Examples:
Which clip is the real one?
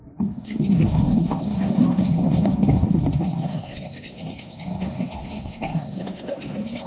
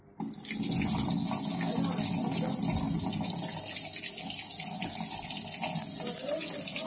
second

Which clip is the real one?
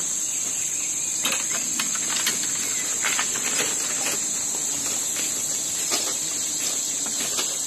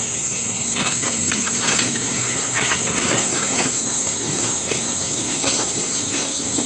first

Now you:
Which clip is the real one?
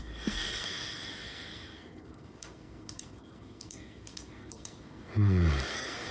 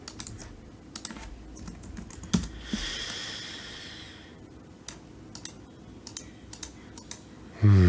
second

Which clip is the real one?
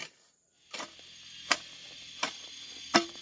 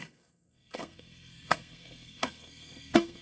first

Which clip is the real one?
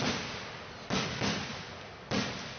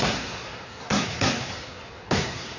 first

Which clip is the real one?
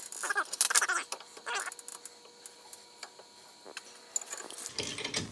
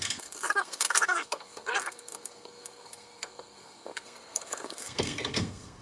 first